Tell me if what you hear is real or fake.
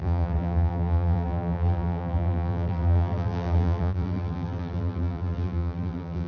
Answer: fake